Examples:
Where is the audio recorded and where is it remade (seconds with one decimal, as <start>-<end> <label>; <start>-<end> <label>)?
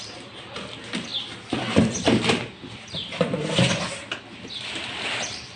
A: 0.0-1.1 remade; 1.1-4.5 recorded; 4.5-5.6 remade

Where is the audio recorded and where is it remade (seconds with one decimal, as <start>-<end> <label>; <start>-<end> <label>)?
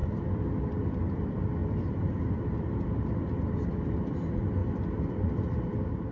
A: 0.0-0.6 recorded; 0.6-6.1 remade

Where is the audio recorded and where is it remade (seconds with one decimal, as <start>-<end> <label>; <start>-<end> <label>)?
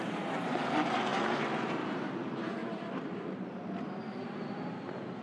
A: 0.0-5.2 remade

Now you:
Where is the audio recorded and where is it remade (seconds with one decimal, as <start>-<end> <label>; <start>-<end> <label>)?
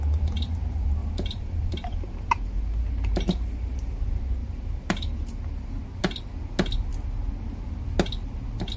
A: 0.0-1.0 recorded; 1.0-4.0 remade; 4.0-4.4 recorded; 4.4-5.8 remade; 5.8-8.8 recorded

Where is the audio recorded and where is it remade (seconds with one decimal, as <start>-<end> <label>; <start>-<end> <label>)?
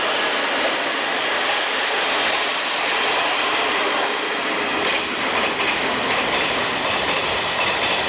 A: 0.0-2.5 recorded; 2.5-7.2 remade; 7.2-8.1 recorded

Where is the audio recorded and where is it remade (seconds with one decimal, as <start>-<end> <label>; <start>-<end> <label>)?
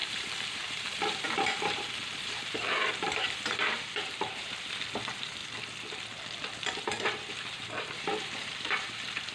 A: 0.0-5.4 remade; 5.4-6.8 recorded; 6.8-9.3 remade